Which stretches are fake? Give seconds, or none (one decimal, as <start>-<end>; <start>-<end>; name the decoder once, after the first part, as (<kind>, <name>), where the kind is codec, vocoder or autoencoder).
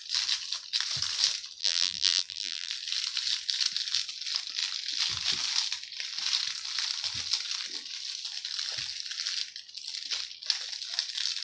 1.6-2.7 (vocoder, BigVGAN v2)